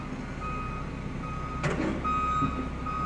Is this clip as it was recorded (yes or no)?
yes